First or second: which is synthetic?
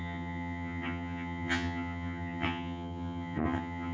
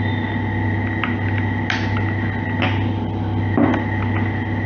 first